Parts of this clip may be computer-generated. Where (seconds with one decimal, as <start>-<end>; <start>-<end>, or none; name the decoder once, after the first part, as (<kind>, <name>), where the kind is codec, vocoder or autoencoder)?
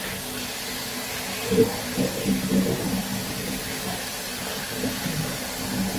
3.0-4.1 (vocoder, BigVGAN v2)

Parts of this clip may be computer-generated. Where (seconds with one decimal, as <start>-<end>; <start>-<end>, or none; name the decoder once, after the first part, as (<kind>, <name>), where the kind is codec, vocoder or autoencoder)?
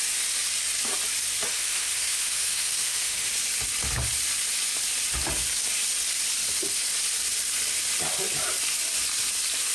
1.5-3.3 (autoencoder, DAC-VAE)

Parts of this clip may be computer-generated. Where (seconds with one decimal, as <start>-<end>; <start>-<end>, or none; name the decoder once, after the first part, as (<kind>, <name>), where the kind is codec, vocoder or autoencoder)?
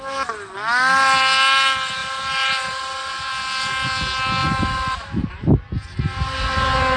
2.0-2.8 (vocoder, BigVGAN v2); 4.4-5.4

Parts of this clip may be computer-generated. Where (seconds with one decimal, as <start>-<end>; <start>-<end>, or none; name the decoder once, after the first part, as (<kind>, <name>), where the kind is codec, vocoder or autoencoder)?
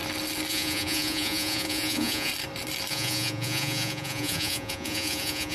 0.5-2.3 (vocoder, Vocos); 2.9-5.5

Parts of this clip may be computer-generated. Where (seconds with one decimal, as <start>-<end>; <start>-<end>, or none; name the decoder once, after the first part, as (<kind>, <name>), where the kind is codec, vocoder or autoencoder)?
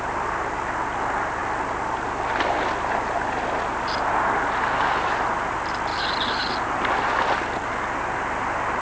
none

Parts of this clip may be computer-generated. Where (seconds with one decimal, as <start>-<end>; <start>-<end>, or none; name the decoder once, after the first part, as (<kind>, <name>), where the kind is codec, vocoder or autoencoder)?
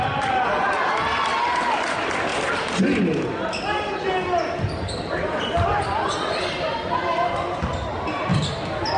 none